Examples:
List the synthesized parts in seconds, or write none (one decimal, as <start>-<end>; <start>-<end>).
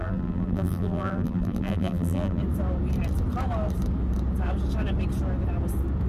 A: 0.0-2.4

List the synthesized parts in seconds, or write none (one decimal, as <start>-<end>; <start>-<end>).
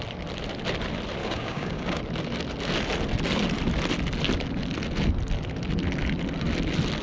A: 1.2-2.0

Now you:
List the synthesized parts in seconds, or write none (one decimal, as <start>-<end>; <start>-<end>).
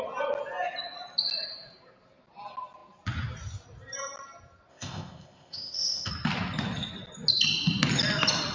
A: 4.7-6.1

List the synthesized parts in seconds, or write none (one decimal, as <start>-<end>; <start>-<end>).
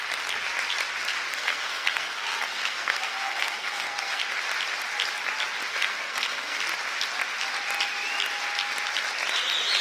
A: 1.3-4.2; 5.7-6.6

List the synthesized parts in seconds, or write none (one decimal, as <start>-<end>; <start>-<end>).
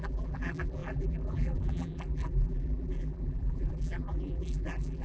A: 0.0-5.0